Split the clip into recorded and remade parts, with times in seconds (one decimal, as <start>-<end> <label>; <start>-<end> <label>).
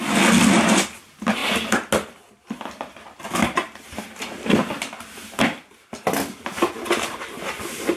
0.0-8.0 recorded